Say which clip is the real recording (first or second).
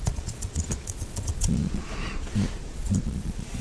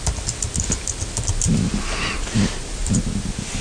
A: second